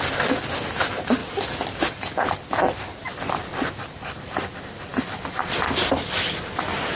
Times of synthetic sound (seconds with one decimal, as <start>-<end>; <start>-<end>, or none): none